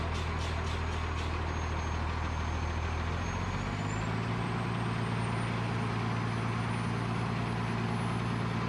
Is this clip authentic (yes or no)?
yes